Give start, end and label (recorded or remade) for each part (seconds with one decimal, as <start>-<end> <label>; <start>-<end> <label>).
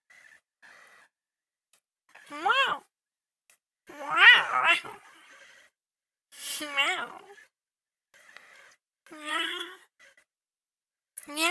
0.0-9.3 recorded; 9.3-9.9 remade; 9.9-11.5 recorded